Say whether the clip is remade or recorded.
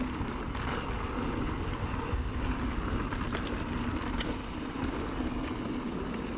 recorded